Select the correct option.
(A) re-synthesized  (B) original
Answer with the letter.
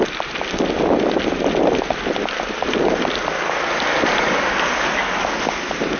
B